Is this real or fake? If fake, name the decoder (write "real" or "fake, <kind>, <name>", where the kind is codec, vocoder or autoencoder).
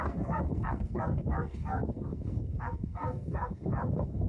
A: fake, codec, SNAC